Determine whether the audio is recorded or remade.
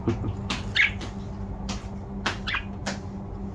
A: recorded